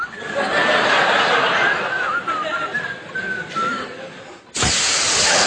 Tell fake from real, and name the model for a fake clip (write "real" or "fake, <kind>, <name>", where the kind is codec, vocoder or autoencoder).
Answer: real